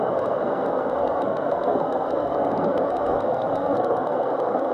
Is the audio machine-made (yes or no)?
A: yes